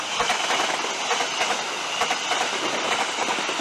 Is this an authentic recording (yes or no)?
yes